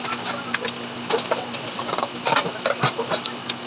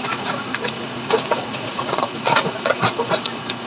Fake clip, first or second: second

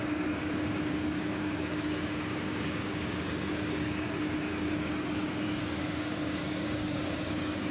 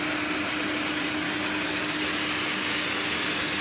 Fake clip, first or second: first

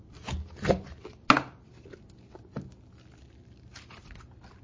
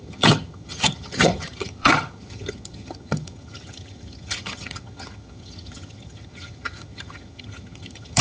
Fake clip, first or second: second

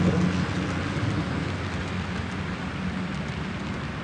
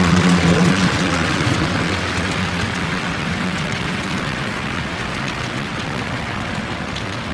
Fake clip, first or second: second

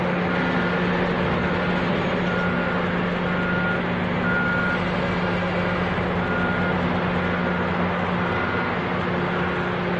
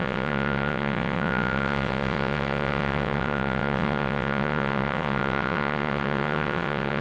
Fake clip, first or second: second